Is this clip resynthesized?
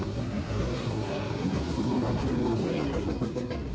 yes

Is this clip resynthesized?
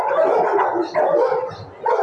no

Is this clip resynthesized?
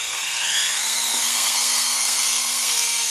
yes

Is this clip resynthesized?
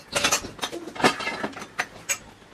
no